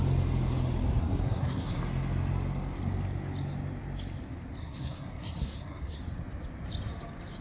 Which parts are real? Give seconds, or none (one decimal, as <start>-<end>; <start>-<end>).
0.0-1.0; 1.8-4.6; 6.0-7.4